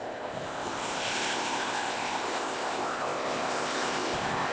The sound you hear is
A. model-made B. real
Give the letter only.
A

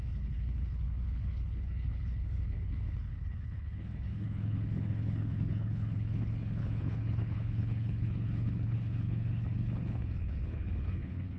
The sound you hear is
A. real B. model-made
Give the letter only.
B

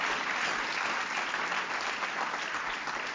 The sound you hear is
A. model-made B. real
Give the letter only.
B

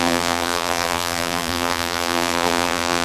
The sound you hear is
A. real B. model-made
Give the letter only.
B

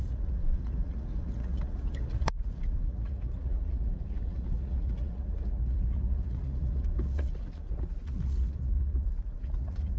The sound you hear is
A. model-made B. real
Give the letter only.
A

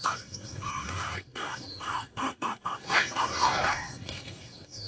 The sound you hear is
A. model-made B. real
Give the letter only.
A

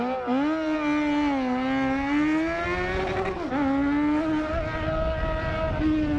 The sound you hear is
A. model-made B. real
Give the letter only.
B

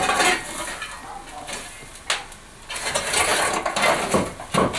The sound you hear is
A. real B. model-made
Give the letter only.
A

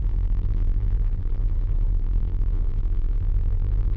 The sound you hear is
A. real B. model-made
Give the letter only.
B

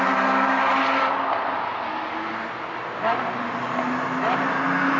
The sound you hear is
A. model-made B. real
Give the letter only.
B